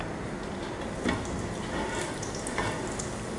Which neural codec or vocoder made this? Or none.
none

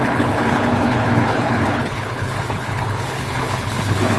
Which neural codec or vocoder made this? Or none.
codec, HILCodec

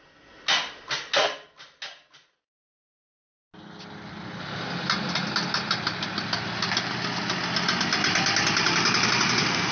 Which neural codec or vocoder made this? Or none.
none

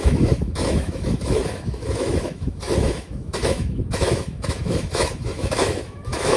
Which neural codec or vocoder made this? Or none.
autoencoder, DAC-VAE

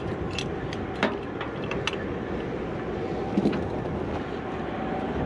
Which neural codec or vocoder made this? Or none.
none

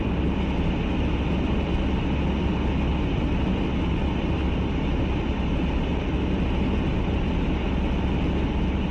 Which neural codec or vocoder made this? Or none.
none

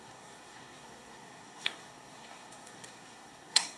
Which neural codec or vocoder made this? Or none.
codec, SNAC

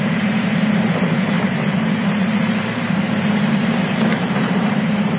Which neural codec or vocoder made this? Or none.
vocoder, BigVGAN v2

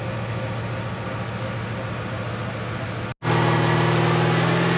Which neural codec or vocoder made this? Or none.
none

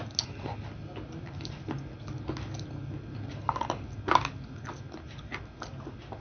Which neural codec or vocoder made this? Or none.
none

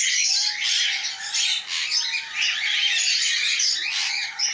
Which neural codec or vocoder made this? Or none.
none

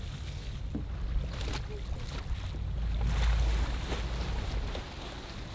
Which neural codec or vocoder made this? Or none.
none